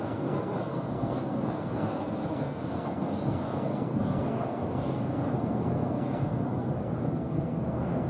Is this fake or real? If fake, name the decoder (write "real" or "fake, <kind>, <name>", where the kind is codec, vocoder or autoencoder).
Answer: fake, codec, SNAC